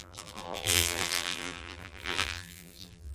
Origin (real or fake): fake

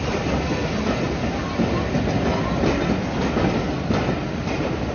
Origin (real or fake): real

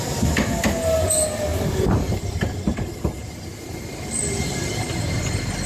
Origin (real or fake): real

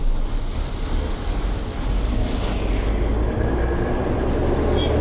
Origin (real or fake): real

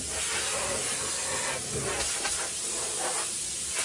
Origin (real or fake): real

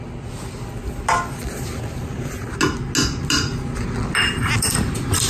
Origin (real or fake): real